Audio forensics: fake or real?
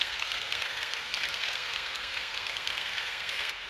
fake